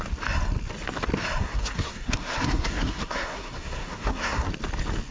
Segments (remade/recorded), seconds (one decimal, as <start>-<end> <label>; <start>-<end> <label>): 0.0-1.4 recorded; 1.4-4.5 remade; 4.5-5.1 recorded